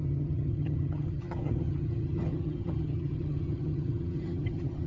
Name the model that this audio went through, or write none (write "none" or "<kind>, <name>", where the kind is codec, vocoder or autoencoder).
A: vocoder, HiFi-GAN